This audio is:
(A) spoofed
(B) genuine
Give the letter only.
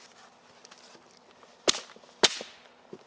B